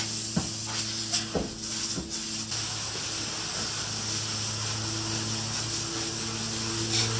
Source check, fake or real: real